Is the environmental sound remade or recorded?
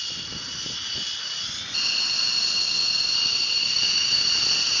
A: recorded